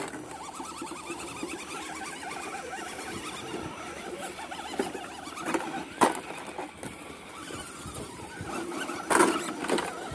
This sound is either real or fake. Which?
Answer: real